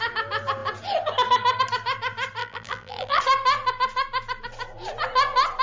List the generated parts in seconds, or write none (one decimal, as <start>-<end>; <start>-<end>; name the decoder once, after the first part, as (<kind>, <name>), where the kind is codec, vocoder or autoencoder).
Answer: 2.4-3.2 (vocoder, BigVGAN v2)